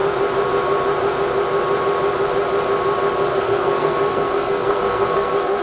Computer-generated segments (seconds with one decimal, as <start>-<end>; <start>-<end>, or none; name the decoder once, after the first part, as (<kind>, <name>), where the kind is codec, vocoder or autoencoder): 3.4-5.6 (codec, SNAC)